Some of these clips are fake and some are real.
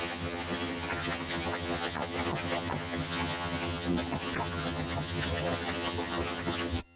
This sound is fake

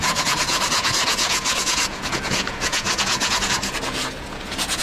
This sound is fake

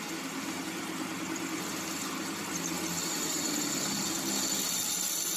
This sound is real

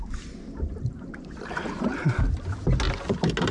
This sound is real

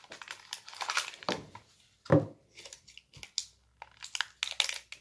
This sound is real